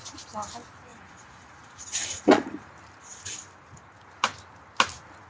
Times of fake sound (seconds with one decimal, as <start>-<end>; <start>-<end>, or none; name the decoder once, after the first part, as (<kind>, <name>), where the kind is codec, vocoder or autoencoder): 0.9-2.7 (vocoder, Vocos)